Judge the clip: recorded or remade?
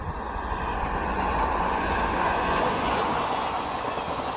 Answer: remade